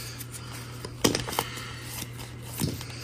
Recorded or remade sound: recorded